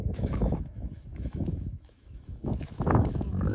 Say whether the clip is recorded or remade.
remade